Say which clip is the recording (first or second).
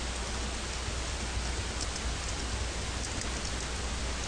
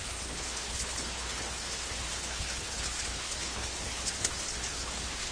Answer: first